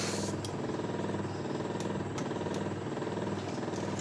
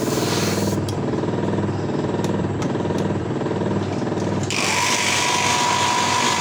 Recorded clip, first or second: first